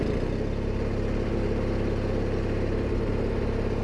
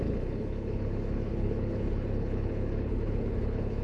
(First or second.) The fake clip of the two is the second